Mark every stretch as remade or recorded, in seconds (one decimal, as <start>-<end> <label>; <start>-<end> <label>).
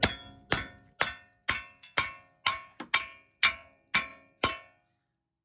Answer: 0.0-5.4 recorded